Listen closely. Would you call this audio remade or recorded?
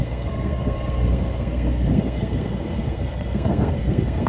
remade